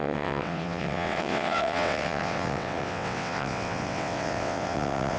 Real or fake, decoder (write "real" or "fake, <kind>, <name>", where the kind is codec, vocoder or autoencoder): fake, vocoder, WaveNeXt